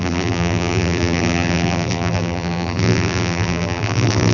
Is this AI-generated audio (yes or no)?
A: yes